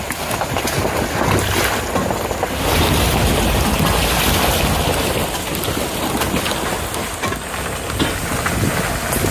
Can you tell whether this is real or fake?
real